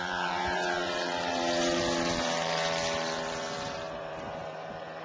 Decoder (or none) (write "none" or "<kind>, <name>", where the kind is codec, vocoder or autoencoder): vocoder, BigVGAN v2